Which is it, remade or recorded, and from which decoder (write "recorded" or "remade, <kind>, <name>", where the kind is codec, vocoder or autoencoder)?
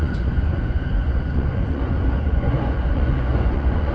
remade, vocoder, Vocos